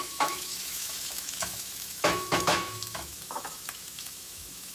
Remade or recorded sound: remade